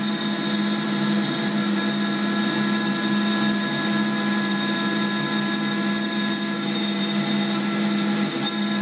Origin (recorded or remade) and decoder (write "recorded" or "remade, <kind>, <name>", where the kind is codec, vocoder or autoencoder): recorded